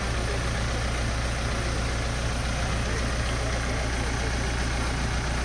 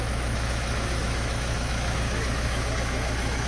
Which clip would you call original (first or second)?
first